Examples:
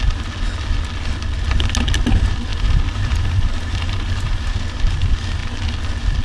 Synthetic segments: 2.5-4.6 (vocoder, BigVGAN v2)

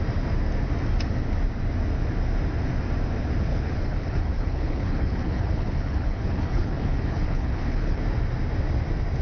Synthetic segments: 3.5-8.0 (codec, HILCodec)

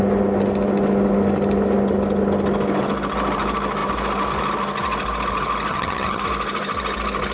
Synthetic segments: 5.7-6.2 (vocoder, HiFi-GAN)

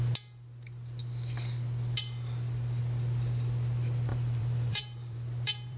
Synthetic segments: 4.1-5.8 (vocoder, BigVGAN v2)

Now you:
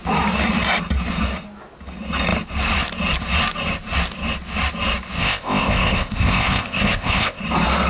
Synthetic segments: 5.2-7.4 (codec, ZipCodec)

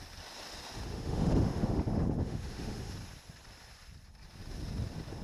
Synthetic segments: 0.9-2.9 (autoencoder, DAC-VAE)

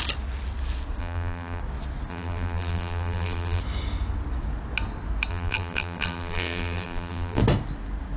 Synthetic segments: 1.0-1.6 (vocoder, BigVGAN v2); 2.1-3.6; 5.3-7.4

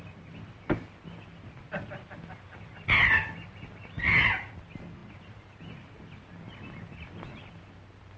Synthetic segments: none